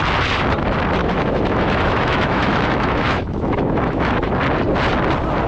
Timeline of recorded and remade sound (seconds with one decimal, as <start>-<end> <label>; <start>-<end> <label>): 0.0-1.0 recorded; 1.0-4.3 remade; 4.3-5.5 recorded